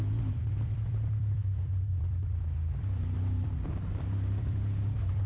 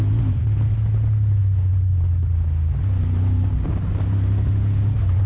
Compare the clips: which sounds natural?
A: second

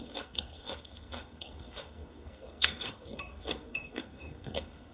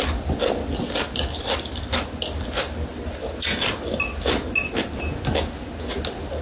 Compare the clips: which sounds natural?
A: second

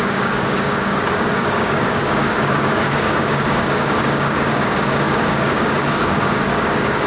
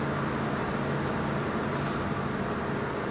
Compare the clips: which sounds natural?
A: second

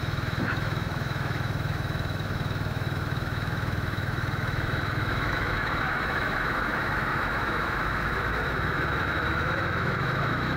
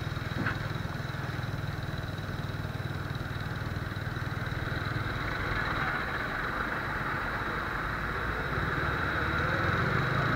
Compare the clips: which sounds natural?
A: second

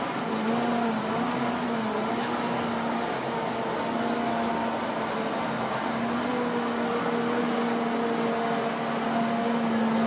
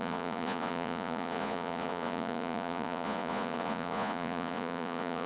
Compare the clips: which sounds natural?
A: first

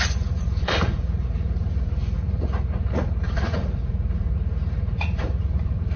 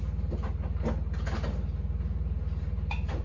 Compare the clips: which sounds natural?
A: second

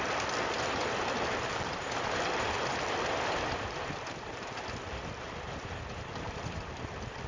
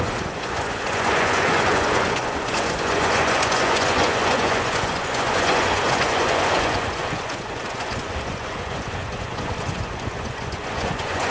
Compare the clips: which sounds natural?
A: first